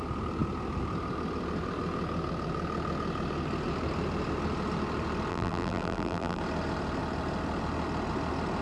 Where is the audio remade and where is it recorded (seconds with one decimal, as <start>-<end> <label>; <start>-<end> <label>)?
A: 0.0-5.3 recorded; 5.3-6.4 remade; 6.4-8.6 recorded

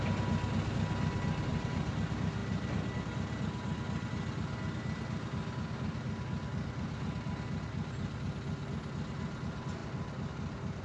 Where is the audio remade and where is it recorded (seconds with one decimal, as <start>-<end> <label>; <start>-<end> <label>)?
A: 0.0-1.5 recorded; 1.5-2.0 remade; 2.0-9.8 recorded; 9.8-10.3 remade; 10.3-10.8 recorded

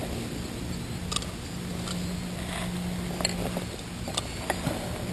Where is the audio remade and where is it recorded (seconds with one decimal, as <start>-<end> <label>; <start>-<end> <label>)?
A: 0.0-5.1 recorded

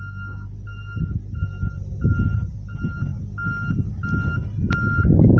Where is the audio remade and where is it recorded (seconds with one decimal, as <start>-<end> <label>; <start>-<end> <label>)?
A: 0.0-5.4 recorded

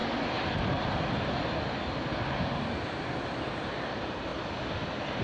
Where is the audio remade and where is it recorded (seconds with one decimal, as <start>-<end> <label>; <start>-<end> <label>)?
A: 0.0-2.3 recorded; 2.3-4.3 remade; 4.3-5.2 recorded

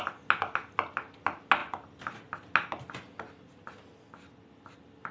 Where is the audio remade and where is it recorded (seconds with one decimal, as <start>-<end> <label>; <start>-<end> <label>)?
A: 0.0-5.1 recorded

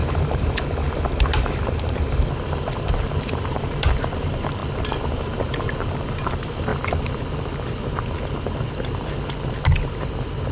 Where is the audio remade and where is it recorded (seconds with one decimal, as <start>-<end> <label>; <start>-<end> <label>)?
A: 0.0-4.6 remade; 4.6-5.1 recorded; 5.1-6.7 remade; 6.7-10.5 recorded

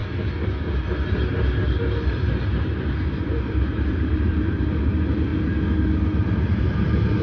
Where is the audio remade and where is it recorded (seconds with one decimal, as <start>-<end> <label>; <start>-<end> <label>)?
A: 0.0-3.2 recorded; 3.2-5.3 remade; 5.3-6.5 recorded; 6.5-7.2 remade